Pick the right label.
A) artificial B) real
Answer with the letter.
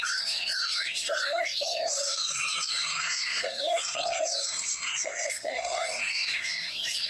A